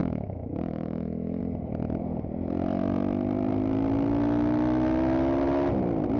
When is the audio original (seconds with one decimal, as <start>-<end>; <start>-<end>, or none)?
1.4-6.2